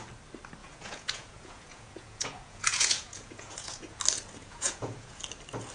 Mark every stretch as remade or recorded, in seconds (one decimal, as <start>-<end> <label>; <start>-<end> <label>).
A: 0.0-0.6 recorded; 0.6-4.0 remade; 4.0-4.4 recorded; 4.4-5.2 remade; 5.2-5.7 recorded